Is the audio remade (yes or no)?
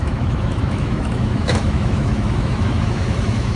yes